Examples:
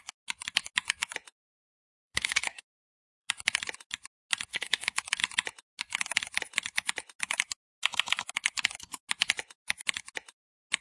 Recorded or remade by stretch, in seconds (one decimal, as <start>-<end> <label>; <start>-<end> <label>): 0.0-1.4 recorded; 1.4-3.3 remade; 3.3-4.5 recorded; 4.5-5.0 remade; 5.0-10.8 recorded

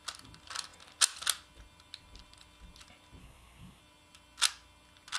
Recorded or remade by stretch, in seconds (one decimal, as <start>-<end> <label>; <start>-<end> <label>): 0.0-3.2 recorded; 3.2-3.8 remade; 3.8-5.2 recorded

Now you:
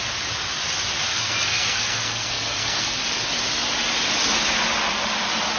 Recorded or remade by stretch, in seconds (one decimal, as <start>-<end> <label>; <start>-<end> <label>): 0.0-1.1 recorded; 1.1-3.0 remade; 3.0-5.6 recorded

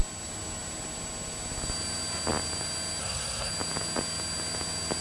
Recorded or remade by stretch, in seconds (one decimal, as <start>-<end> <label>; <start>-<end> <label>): 0.0-3.0 recorded; 3.0-3.5 remade; 3.5-5.0 recorded

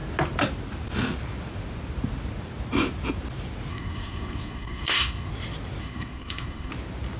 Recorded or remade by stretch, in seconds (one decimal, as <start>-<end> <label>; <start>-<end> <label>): 0.0-3.7 recorded; 3.7-5.3 remade; 5.3-5.8 recorded; 5.8-6.7 remade; 6.7-7.2 recorded